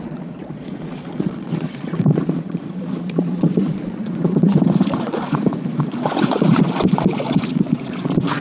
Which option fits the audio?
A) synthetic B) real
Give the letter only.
A